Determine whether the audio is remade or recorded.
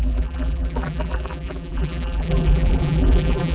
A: remade